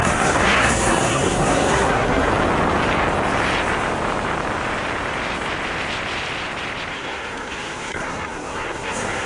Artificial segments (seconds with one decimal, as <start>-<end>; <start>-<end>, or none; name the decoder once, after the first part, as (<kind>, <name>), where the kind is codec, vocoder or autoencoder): 0.0-2.3 (codec, SNAC); 6.9-9.3